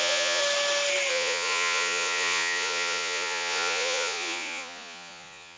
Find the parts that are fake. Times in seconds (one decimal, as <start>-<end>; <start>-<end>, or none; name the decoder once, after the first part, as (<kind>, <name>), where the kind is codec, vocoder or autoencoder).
0.0-0.4 (vocoder, Vocos); 1.1-5.6